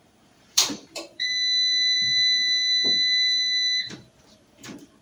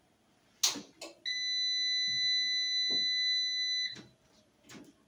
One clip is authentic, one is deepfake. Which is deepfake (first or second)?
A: first